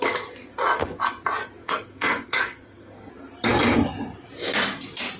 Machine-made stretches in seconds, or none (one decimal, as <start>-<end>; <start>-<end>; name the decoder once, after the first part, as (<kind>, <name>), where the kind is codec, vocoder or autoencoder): 1.6-3.1 (codec, SNAC)